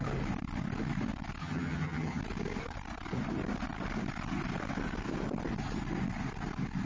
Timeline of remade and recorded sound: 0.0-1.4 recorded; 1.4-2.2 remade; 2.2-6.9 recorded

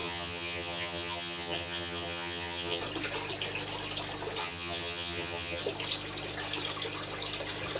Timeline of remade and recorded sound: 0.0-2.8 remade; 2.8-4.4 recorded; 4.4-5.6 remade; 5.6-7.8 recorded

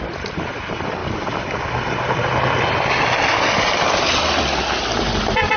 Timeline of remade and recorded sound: 0.0-5.6 recorded

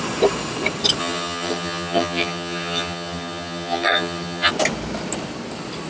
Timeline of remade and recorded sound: 0.0-1.0 recorded; 1.0-4.5 remade; 4.5-5.9 recorded

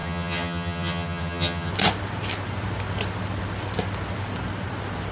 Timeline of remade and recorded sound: 0.0-1.7 remade; 1.7-5.1 recorded